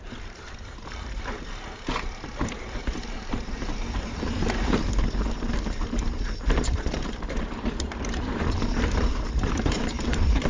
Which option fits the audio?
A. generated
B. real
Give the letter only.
A